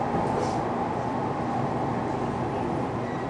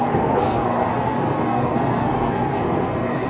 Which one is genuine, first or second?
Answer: first